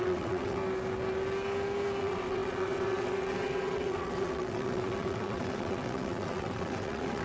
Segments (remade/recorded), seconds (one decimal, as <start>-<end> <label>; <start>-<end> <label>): 0.0-0.6 remade; 0.6-2.0 recorded; 2.0-7.2 remade

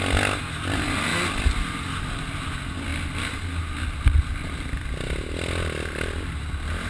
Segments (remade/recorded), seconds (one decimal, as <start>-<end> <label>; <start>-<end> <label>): 0.0-6.9 recorded

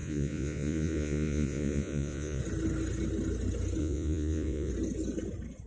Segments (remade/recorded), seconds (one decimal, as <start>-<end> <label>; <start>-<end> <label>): 0.0-2.4 remade; 2.4-3.8 recorded; 3.8-4.7 remade; 4.7-5.7 recorded

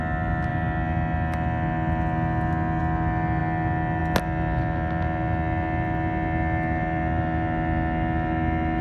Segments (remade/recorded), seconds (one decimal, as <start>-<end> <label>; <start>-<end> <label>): 0.0-8.8 recorded

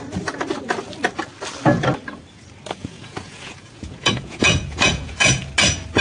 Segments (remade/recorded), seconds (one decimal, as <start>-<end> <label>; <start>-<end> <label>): 0.0-2.8 recorded; 2.8-5.4 remade; 5.4-6.0 recorded

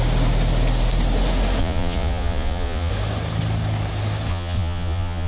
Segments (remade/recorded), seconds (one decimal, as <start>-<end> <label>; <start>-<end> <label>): 0.0-1.6 recorded; 1.6-2.9 remade; 2.9-4.3 recorded; 4.3-5.3 remade